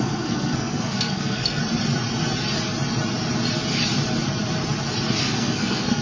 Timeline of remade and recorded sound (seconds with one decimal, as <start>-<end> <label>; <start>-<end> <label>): 0.0-1.6 remade; 1.6-5.2 recorded; 5.2-6.0 remade